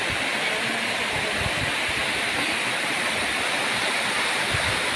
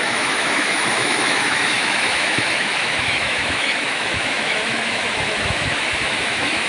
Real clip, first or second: first